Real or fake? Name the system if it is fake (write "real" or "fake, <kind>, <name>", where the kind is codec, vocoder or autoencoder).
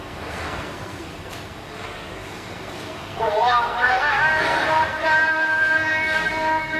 fake, codec, SNAC